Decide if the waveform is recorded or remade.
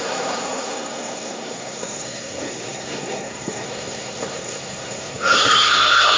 remade